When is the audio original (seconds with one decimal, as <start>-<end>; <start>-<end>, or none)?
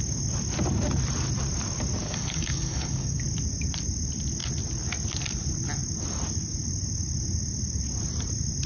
0.0-2.0; 3.2-8.7